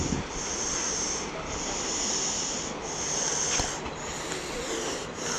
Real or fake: real